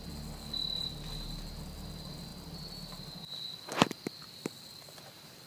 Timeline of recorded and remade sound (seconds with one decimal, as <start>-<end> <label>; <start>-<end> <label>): 0.0-5.5 recorded